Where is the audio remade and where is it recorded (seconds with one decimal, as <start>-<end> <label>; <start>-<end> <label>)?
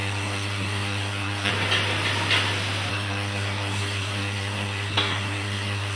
0.0-1.5 remade; 1.5-2.9 recorded; 2.9-6.0 remade